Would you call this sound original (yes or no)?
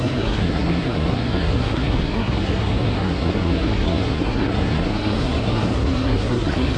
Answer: no